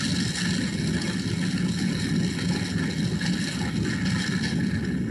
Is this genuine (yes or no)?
yes